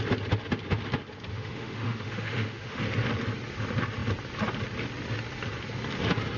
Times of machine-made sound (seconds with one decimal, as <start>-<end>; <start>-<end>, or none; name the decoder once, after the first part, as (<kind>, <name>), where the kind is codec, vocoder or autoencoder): 1.3-2.8 (autoencoder, DAC-VAE)